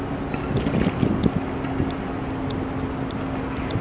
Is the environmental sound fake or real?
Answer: real